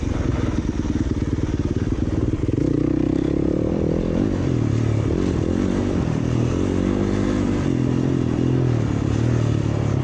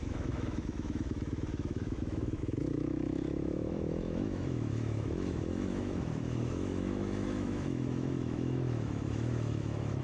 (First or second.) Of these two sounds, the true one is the first